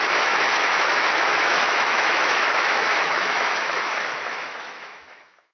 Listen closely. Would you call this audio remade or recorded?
remade